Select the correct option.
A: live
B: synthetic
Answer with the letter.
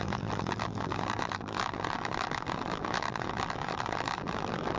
B